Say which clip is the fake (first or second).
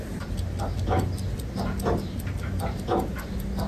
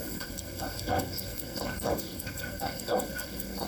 second